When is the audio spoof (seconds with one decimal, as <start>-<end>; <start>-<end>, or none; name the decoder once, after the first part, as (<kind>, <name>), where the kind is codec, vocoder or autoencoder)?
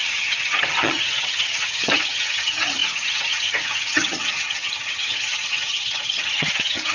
0.0-6.9 (vocoder, HiFi-GAN)